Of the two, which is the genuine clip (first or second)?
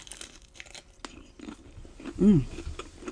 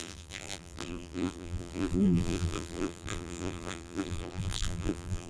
first